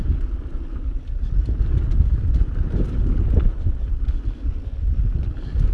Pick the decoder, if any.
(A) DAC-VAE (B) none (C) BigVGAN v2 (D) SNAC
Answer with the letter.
B